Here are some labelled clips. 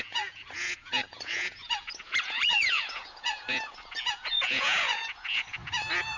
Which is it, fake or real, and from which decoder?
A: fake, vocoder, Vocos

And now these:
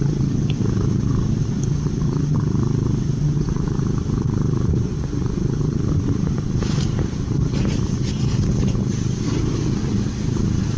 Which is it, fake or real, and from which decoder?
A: real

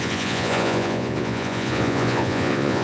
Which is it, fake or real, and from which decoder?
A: fake, vocoder, Vocos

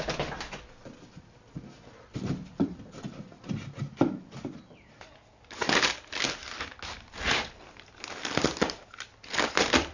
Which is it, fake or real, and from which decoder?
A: real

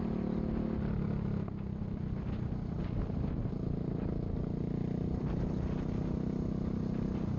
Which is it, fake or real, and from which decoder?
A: real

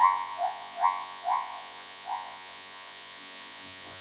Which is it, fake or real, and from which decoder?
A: fake, vocoder, Vocos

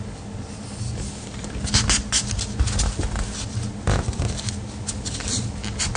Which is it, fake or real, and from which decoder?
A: real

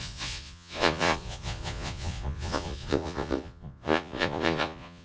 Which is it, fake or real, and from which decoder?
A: fake, vocoder, Vocos